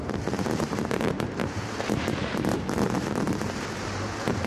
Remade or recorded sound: remade